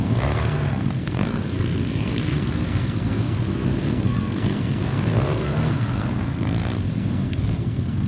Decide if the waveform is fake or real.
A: fake